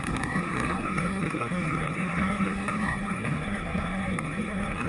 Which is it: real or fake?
fake